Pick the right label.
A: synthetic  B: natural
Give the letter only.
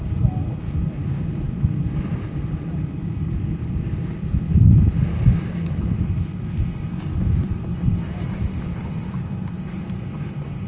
B